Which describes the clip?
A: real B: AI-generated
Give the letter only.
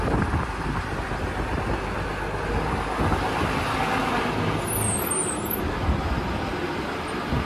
A